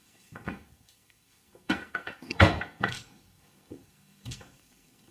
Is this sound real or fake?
fake